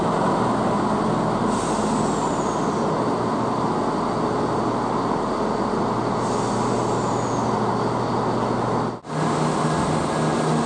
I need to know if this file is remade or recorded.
recorded